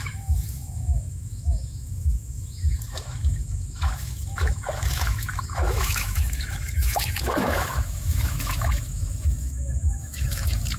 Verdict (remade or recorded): remade